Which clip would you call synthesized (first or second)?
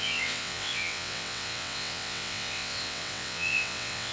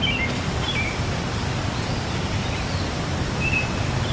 first